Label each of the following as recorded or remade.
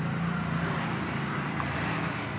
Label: recorded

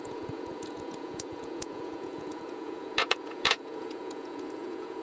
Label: remade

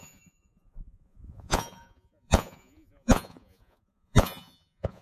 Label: remade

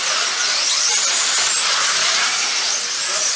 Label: recorded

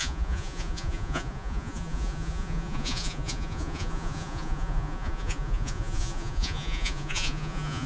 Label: remade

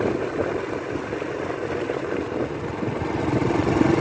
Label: recorded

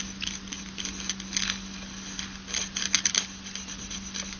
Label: recorded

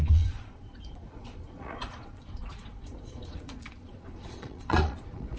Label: remade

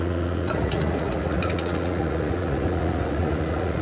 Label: remade